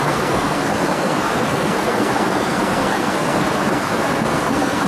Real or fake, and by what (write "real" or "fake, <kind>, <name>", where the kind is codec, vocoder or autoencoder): fake, codec, SNAC